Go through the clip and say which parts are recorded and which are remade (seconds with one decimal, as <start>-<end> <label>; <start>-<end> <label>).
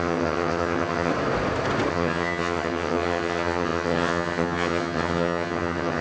0.0-1.1 remade; 1.1-1.9 recorded; 1.9-6.0 remade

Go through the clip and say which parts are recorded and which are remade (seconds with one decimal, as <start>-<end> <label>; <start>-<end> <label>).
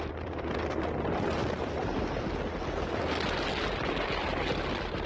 0.0-5.1 recorded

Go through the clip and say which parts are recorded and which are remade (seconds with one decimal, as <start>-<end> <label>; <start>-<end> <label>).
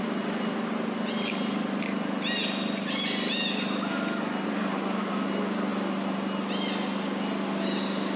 0.0-8.2 recorded